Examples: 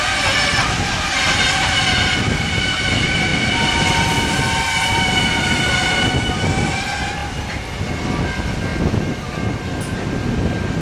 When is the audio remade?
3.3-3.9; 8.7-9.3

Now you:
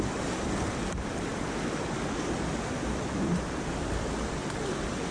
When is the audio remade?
none

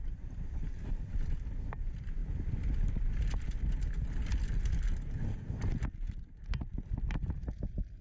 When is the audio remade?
2.2-4.9

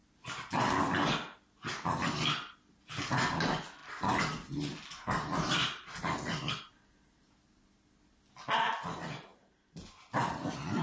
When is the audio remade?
none

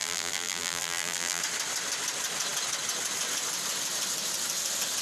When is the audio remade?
0.0-1.4

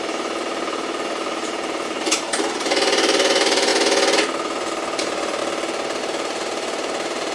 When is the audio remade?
0.0-3.7; 5.0-5.4; 6.0-7.3

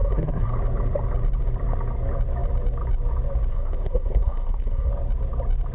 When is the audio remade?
0.0-0.5; 3.5-4.9

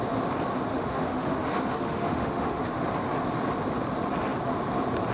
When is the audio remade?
0.7-2.8